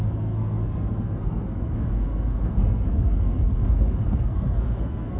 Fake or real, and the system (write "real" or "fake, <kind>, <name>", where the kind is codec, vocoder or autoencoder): fake, codec, SNAC